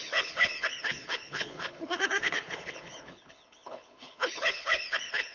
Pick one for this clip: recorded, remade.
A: remade